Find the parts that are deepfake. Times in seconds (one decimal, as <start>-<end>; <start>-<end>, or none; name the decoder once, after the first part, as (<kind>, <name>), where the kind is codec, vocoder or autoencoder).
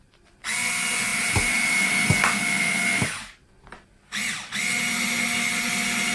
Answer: 1.1-1.9 (vocoder, BigVGAN v2)